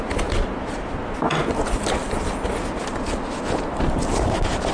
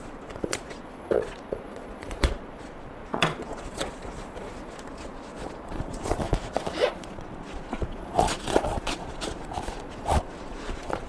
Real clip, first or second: first